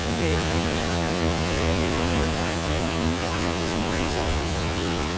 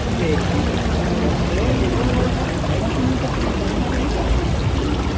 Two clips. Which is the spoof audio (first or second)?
first